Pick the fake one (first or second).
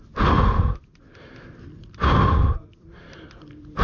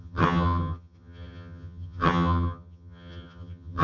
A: second